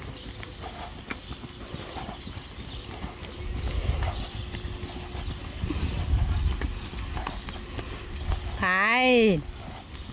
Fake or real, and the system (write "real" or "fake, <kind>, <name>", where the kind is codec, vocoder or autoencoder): real